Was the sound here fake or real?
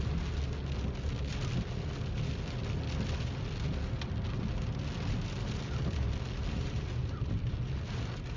real